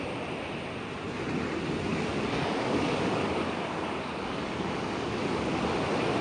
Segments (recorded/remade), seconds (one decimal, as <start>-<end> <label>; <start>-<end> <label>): 0.0-1.9 recorded; 1.9-5.6 remade; 5.6-6.2 recorded